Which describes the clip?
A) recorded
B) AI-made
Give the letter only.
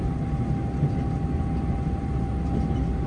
A